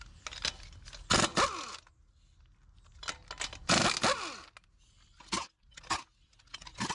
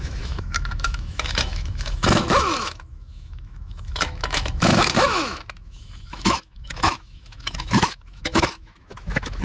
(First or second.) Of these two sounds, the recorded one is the first